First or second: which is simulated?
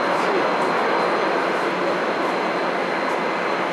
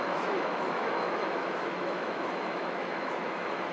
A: second